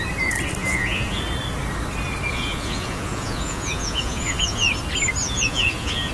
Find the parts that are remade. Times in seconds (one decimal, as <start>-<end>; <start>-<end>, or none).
0.6-1.2; 2.3-4.7; 5.2-6.1